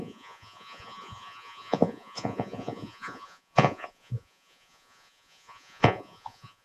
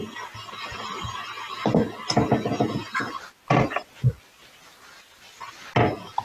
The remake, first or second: first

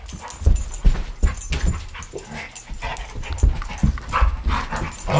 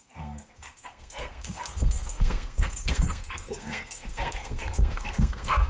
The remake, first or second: second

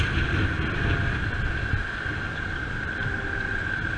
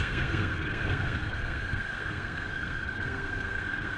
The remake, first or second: second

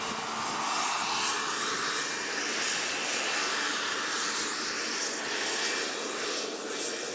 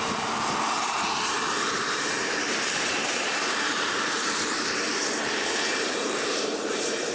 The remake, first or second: second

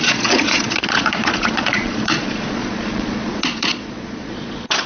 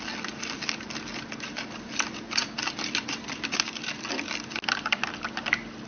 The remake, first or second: first